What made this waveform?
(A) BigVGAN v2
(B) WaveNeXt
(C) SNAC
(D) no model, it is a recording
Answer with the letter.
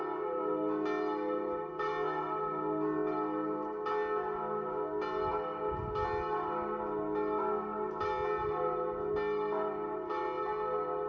D